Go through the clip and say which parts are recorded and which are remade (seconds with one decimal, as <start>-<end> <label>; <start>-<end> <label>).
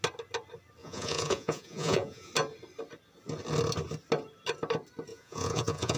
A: 0.0-0.8 recorded; 0.8-2.3 remade; 2.3-5.1 recorded; 5.1-6.0 remade